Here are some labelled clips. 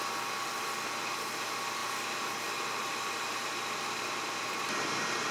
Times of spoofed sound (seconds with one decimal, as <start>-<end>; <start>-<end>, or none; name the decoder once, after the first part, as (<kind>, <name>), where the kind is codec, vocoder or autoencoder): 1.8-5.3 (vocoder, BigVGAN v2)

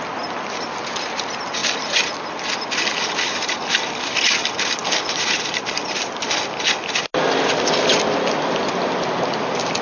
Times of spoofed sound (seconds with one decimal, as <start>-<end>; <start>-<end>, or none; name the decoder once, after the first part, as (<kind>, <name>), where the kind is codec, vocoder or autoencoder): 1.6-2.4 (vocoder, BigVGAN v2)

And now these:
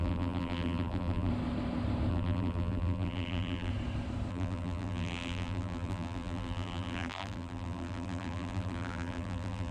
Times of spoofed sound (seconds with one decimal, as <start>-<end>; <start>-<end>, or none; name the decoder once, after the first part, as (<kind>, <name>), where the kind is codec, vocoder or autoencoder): 0.0-1.3 (vocoder, BigVGAN v2); 2.1-3.7; 4.3-9.7

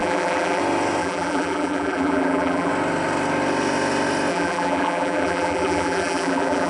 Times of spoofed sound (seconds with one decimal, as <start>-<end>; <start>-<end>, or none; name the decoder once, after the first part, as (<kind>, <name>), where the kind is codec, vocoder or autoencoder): 0.0-0.6 (vocoder, BigVGAN v2); 1.0-2.7; 4.3-6.7

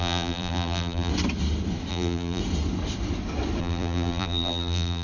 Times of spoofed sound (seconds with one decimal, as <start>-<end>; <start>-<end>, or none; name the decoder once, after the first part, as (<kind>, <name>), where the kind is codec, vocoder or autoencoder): 0.0-1.1 (vocoder, BigVGAN v2); 1.9-2.4; 3.6-5.0